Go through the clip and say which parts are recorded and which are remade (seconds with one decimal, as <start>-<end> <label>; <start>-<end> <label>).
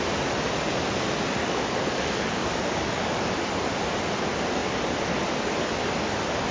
0.0-1.4 recorded; 1.4-3.1 remade; 3.1-6.5 recorded